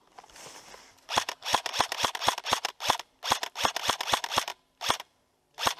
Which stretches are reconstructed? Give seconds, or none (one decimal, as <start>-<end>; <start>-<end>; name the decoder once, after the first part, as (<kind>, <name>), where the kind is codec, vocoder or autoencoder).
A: none